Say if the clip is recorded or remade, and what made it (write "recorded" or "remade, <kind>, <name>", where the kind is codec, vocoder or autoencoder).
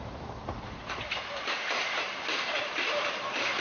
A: remade, vocoder, BigVGAN v2